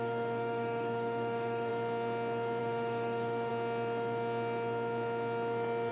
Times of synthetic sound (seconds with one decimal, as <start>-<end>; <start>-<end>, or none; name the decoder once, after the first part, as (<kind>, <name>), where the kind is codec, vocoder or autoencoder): 0.0-1.7 (autoencoder, DAC-VAE); 2.6-3.5